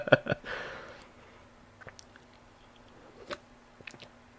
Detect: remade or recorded recorded